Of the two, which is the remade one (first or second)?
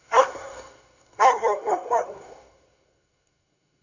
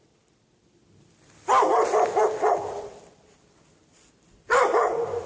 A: first